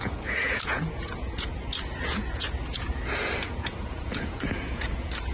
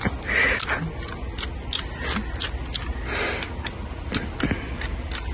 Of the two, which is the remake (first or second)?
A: first